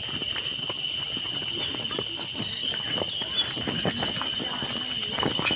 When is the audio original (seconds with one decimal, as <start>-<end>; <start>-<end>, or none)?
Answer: 0.0-5.6